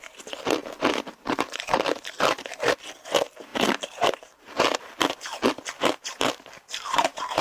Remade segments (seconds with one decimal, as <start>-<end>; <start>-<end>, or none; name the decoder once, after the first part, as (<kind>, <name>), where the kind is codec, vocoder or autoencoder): 0.6-2.6 (vocoder, BigVGAN v2); 3.5-5.0; 6.7-7.4